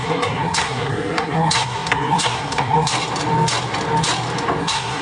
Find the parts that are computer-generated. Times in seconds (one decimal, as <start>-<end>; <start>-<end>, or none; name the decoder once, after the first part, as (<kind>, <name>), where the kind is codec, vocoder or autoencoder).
0.0-2.9 (codec, SNAC); 4.6-5.0

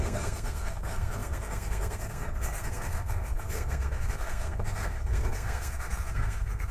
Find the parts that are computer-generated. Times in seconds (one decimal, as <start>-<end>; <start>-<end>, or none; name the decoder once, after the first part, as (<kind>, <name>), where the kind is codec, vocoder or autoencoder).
0.0-6.7 (codec, SNAC)